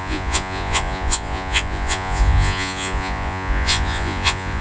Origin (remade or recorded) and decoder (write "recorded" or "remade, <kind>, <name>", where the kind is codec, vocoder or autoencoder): remade, vocoder, Vocos